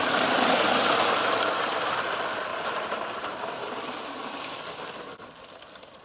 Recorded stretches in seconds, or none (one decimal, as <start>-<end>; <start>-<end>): 0.0-2.5; 4.6-6.0